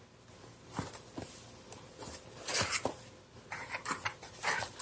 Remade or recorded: recorded